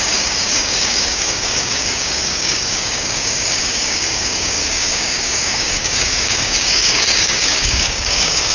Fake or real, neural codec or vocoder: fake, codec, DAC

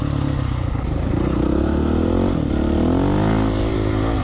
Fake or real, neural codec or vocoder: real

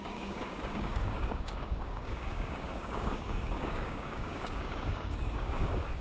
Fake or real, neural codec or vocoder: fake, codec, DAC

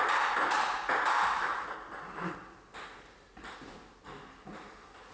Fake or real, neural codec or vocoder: real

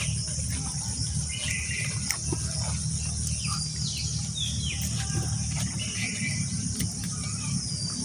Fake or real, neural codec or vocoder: real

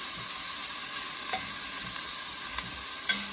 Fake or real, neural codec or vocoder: real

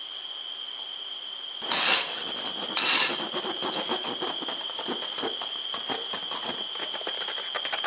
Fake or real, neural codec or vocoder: real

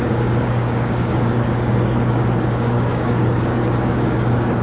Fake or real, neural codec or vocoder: fake, codec, DAC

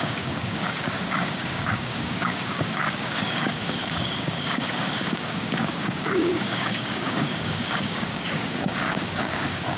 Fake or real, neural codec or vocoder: fake, codec, DAC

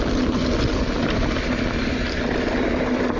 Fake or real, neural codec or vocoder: real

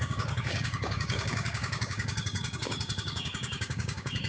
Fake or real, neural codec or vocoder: fake, codec, DAC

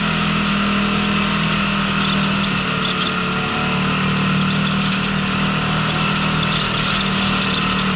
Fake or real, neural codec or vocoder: real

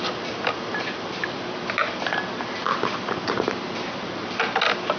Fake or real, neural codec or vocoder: real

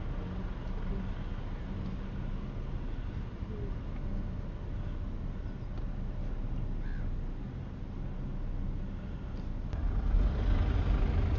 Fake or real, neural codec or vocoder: real